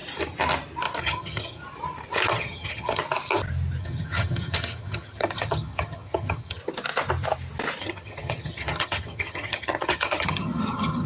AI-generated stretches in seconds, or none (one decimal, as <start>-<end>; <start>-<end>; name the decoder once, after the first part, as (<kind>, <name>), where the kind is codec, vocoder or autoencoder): 1.0-1.6 (vocoder, HiFi-GAN); 2.3-3.0; 3.8-6.6; 7.8-11.1